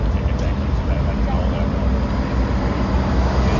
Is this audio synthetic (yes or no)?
no